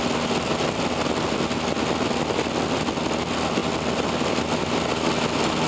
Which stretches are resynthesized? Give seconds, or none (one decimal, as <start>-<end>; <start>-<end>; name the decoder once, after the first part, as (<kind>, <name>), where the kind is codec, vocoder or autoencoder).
none

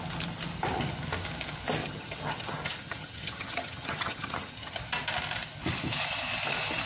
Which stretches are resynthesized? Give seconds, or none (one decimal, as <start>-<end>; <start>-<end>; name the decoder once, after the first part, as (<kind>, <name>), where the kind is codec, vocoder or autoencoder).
1.8-4.8 (vocoder, HiFi-GAN)